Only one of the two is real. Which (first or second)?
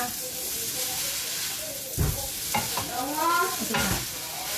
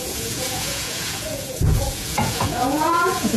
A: first